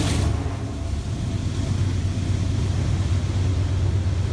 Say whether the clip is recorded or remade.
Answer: recorded